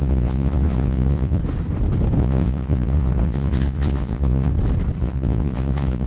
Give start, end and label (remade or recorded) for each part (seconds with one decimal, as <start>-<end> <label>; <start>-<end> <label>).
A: 0.0-1.4 remade; 1.4-2.2 recorded; 2.2-4.5 remade; 4.5-5.0 recorded; 5.0-6.1 remade